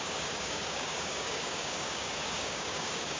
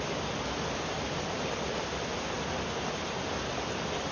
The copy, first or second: first